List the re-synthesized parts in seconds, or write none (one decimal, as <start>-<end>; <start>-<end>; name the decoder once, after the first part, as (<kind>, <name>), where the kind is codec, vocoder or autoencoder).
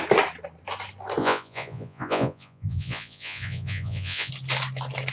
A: 1.2-4.3 (vocoder, Vocos)